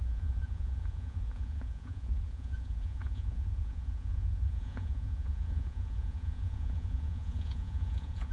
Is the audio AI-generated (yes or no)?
yes